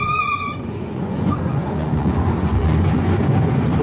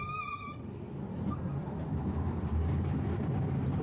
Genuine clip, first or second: second